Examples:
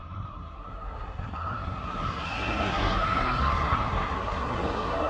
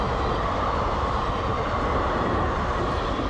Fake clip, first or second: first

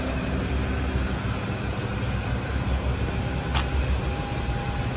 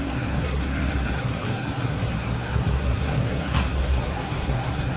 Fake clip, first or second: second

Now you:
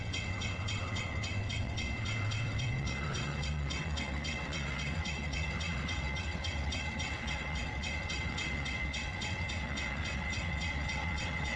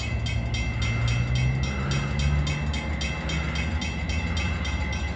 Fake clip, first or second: first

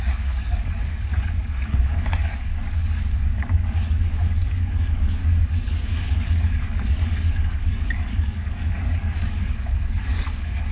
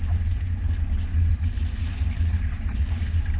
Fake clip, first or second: first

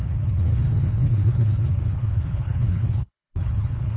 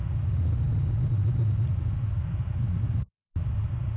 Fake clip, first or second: first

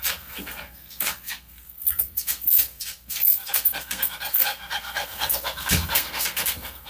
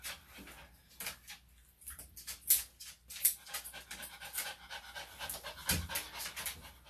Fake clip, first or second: first